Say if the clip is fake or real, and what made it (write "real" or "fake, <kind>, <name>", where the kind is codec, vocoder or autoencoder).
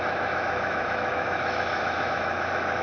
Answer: fake, autoencoder, DAC-VAE